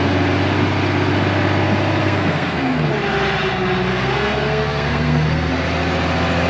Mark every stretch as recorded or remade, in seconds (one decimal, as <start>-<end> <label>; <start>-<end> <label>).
0.0-2.0 recorded; 2.0-2.9 remade; 2.9-3.9 recorded; 3.9-5.5 remade; 5.5-6.5 recorded